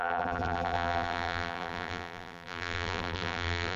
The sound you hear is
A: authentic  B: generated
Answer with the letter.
B